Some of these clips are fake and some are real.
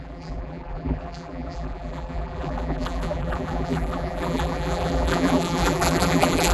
fake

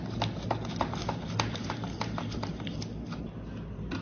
real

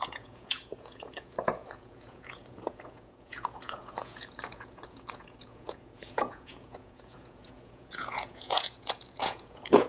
fake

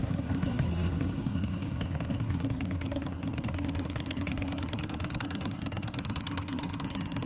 fake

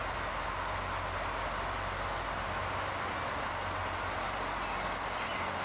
real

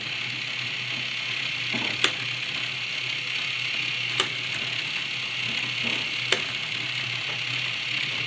real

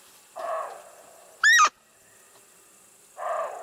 real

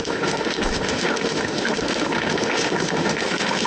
fake